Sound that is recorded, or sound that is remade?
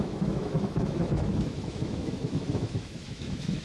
remade